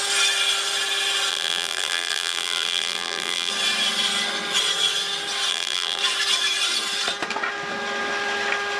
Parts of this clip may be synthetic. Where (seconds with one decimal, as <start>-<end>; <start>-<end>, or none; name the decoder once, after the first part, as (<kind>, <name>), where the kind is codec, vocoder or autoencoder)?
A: 1.3-3.5 (vocoder, BigVGAN v2); 5.5-6.0